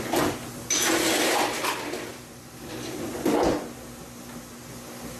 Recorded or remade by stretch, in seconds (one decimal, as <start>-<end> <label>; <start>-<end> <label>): 0.0-2.1 recorded; 2.1-3.1 remade; 3.1-5.2 recorded